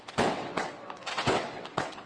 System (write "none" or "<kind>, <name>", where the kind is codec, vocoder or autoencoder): vocoder, WaveNeXt